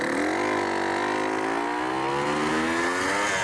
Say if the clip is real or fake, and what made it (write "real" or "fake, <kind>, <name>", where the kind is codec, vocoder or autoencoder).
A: real